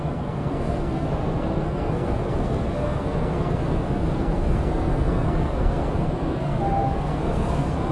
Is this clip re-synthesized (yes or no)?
yes